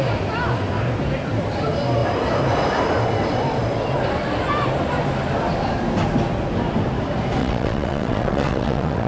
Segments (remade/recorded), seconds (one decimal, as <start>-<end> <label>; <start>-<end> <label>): 0.0-7.4 recorded; 7.4-9.1 remade